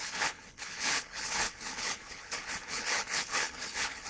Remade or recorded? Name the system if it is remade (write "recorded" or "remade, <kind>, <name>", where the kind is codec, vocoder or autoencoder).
remade, codec, HILCodec